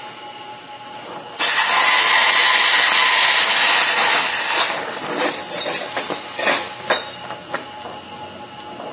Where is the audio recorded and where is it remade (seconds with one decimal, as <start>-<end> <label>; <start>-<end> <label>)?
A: 0.0-8.9 recorded